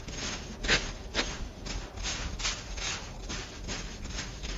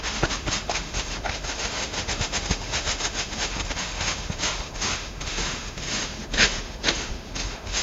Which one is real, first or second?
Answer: first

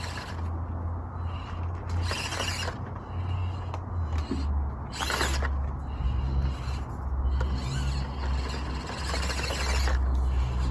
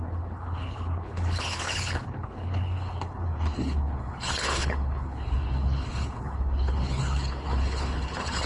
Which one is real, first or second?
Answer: first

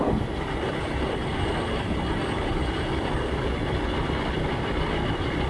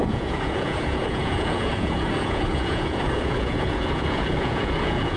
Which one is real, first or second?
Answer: first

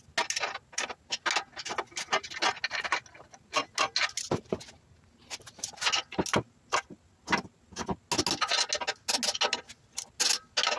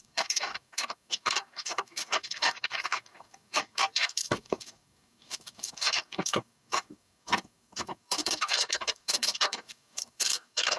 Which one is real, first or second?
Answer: first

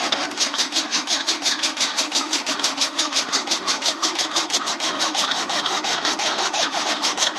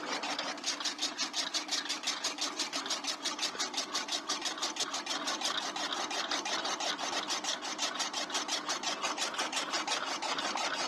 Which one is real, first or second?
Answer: second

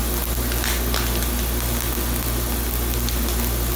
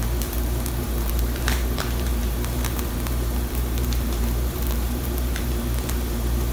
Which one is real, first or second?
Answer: first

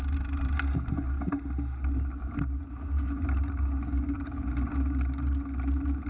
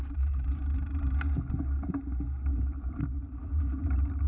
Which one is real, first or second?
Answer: first